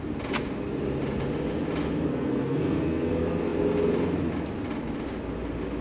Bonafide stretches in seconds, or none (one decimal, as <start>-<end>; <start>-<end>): 0.0-2.1; 3.1-5.8